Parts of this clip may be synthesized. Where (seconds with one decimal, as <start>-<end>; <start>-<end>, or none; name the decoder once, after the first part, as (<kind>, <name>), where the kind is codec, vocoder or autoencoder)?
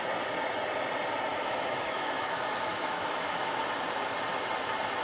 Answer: 1.3-3.6 (autoencoder, DAC-VAE)